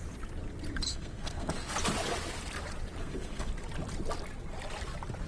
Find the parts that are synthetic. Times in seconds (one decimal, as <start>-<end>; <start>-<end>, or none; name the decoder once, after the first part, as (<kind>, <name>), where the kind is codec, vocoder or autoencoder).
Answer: 0.9-1.7 (codec, SNAC); 3.0-3.5